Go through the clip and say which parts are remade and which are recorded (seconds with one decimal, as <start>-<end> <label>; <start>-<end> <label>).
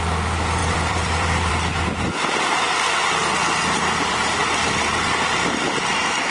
0.0-0.6 recorded; 0.6-1.5 remade; 1.5-3.2 recorded; 3.2-5.7 remade; 5.7-6.3 recorded